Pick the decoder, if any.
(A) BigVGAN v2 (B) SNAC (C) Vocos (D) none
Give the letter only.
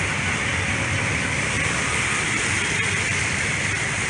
A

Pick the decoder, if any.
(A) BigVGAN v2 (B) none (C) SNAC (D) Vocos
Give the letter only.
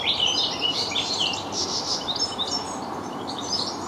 A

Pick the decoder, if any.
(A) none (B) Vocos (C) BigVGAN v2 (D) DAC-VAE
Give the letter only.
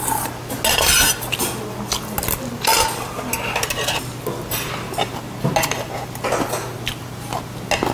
A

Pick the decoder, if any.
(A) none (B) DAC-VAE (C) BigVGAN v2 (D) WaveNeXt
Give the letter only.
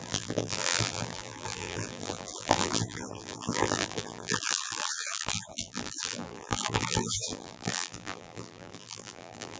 C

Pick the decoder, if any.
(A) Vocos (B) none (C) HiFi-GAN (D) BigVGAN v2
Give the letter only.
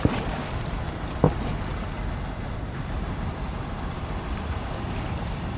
B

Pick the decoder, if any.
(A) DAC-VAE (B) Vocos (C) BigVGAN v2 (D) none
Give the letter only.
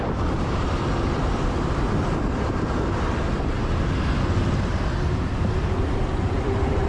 C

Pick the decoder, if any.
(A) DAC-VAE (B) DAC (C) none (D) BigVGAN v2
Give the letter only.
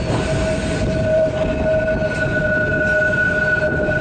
C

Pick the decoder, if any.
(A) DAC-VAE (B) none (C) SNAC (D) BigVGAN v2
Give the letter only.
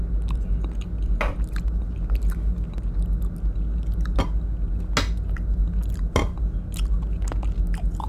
B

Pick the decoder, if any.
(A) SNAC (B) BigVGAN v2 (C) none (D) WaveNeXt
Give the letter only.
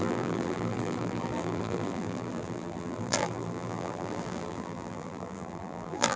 B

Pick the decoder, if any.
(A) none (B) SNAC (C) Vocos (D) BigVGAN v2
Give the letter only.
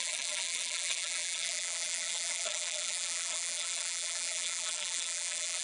D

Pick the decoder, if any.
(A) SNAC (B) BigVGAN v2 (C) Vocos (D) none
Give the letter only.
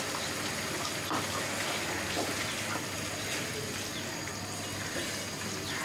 D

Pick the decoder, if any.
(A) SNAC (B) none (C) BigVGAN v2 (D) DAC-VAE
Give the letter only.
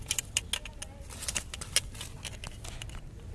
B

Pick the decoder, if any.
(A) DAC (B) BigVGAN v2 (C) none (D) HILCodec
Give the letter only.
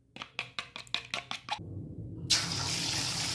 C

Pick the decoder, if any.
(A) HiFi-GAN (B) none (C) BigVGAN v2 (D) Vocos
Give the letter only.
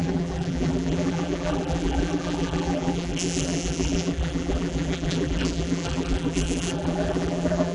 C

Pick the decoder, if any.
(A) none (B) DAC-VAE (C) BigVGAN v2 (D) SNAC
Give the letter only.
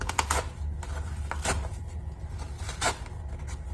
A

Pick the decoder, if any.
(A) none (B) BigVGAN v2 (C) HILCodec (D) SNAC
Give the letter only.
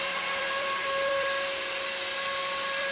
B